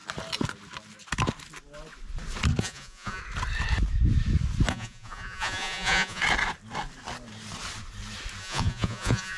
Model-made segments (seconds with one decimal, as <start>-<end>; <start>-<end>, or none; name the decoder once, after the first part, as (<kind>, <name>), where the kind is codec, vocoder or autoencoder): 2.6-3.2 (vocoder, Vocos); 4.7-6.2; 8.4-9.4